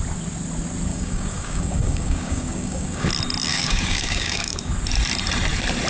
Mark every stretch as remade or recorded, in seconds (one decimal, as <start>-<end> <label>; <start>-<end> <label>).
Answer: 0.0-0.9 recorded; 0.9-3.1 remade; 3.1-3.5 recorded; 3.5-4.7 remade; 4.7-5.9 recorded